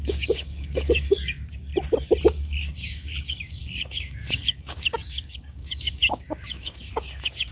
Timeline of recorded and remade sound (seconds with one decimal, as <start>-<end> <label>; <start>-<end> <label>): 0.0-1.7 remade; 1.7-2.2 recorded; 2.2-7.5 remade